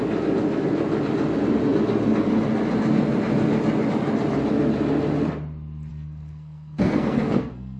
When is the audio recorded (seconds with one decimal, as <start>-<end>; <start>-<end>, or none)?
0.0-5.9